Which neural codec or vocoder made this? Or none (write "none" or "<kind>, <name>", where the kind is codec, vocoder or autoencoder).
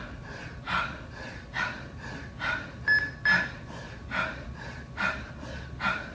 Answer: none